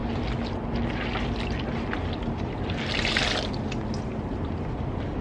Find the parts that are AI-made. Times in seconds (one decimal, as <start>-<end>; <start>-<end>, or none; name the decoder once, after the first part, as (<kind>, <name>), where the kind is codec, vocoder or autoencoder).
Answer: none